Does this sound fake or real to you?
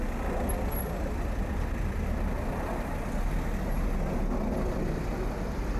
real